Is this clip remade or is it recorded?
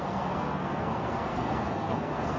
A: remade